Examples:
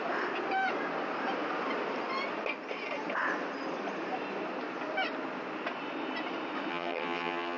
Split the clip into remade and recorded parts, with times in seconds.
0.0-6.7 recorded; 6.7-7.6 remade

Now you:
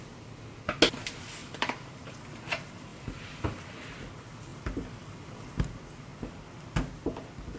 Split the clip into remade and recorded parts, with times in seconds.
0.0-1.4 recorded; 1.4-2.2 remade; 2.2-2.9 recorded; 2.9-3.6 remade; 3.6-7.6 recorded

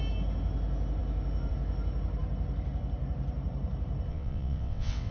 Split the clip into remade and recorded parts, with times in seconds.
0.0-4.1 recorded; 4.1-5.1 remade

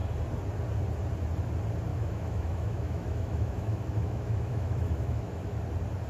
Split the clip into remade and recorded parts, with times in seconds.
0.0-1.9 recorded; 1.9-5.6 remade; 5.6-6.1 recorded

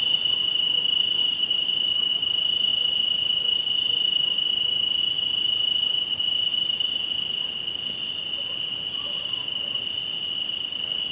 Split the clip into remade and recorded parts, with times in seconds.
0.0-1.2 recorded; 1.2-2.1 remade; 2.1-11.1 recorded

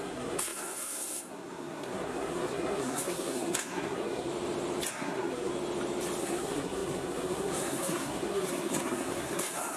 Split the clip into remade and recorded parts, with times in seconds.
0.0-4.3 remade; 4.3-4.9 recorded; 4.9-5.5 remade; 5.5-6.2 recorded; 6.2-9.8 remade